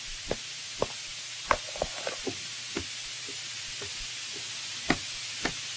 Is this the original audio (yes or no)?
yes